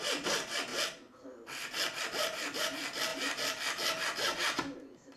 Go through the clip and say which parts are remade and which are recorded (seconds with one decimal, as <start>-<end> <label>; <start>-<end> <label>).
0.0-0.7 remade; 0.7-2.0 recorded; 2.0-3.1 remade; 3.1-5.2 recorded